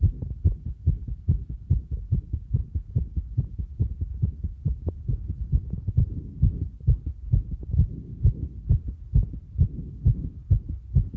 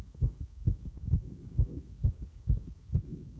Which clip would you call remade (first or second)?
second